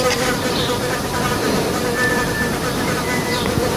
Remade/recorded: recorded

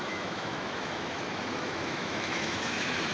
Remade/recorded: remade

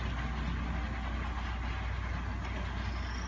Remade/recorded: recorded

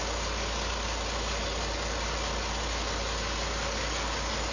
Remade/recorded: recorded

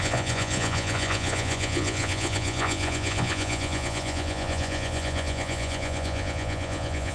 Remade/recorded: remade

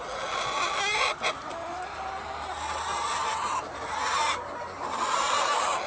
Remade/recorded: recorded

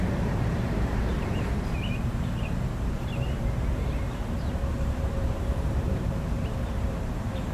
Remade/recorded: remade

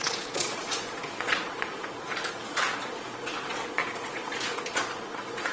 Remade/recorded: remade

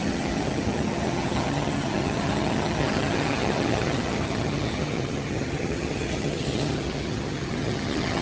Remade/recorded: remade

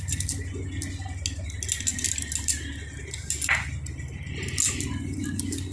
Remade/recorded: recorded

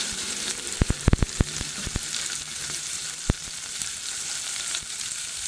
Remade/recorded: remade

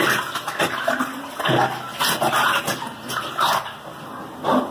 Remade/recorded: recorded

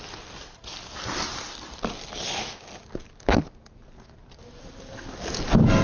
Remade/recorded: recorded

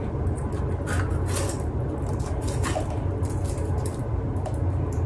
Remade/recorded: remade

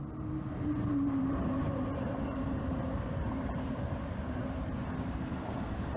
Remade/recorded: remade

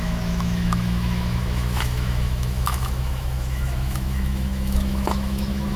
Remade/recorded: remade